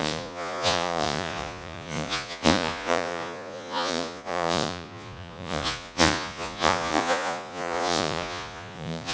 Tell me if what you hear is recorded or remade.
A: remade